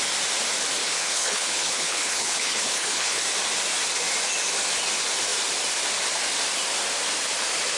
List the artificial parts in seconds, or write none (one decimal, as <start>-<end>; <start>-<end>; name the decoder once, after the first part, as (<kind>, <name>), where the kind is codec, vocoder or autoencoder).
0.8-3.2 (codec, HILCodec)